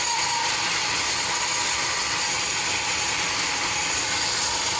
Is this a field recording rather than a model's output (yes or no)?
yes